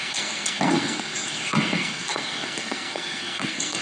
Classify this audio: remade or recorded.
remade